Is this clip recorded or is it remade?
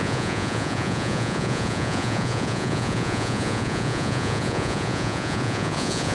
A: remade